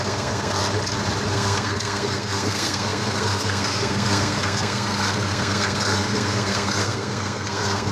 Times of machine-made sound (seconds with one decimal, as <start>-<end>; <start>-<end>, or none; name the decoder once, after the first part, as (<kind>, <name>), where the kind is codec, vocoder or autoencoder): 0.0-0.6 (codec, SNAC); 1.3-7.9